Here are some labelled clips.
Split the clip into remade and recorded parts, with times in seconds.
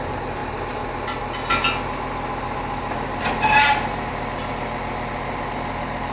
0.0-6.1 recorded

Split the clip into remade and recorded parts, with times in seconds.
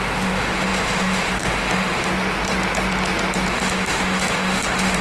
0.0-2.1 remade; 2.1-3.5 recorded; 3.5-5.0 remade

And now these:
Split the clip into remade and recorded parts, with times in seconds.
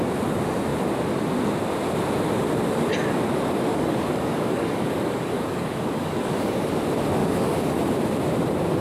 0.0-3.7 recorded; 3.7-6.7 remade; 6.7-7.2 recorded; 7.2-7.8 remade; 7.8-8.8 recorded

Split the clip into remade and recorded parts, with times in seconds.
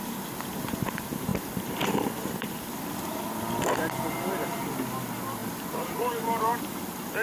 0.0-1.3 recorded; 1.3-2.6 remade; 2.6-7.2 recorded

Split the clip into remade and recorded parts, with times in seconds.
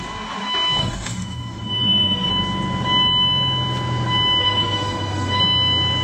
0.0-0.8 recorded; 0.8-2.3 remade; 2.3-4.4 recorded; 4.4-5.4 remade; 5.4-6.0 recorded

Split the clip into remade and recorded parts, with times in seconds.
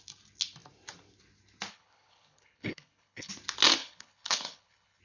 0.0-1.7 recorded; 1.7-3.3 remade; 3.3-3.8 recorded; 3.8-5.0 remade